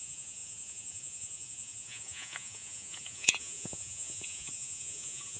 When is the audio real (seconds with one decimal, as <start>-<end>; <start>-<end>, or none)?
none